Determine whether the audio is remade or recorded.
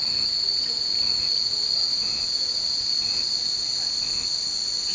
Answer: recorded